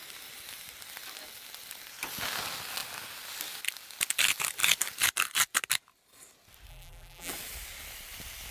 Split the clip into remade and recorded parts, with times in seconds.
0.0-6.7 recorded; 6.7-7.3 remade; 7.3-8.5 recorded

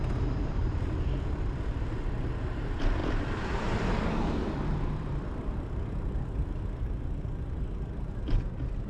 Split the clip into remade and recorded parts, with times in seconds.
0.0-0.6 recorded; 0.6-1.3 remade; 1.3-3.0 recorded; 3.0-8.1 remade; 8.1-8.9 recorded

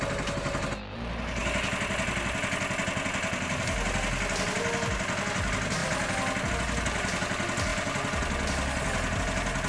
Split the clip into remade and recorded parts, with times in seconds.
0.0-9.7 recorded

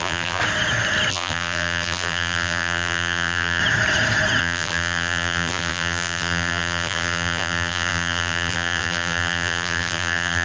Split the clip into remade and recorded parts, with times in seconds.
0.0-0.4 remade; 0.4-1.1 recorded; 1.1-3.6 remade; 3.6-4.4 recorded; 4.4-10.4 remade